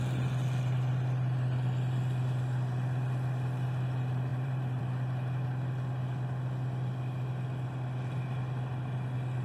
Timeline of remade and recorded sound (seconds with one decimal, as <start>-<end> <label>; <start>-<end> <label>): 0.0-4.3 recorded; 4.3-4.8 remade; 4.8-9.4 recorded